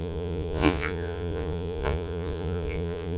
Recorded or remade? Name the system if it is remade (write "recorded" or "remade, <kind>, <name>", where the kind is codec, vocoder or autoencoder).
remade, vocoder, Vocos